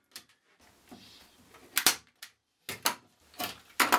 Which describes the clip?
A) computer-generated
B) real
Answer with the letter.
B